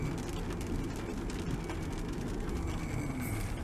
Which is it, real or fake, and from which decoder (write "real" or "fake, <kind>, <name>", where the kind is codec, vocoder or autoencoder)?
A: real